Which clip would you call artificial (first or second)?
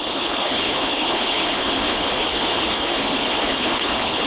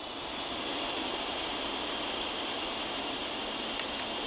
first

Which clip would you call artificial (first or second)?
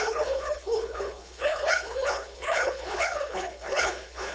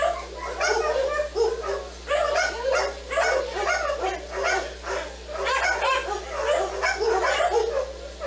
first